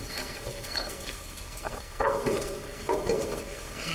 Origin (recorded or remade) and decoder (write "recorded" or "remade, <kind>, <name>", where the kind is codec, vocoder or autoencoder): remade, codec, SNAC